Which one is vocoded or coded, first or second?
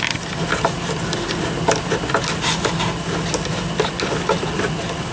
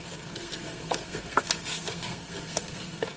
second